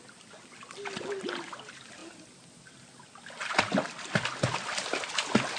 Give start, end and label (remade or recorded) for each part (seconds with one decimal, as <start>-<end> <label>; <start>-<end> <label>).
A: 0.0-5.6 recorded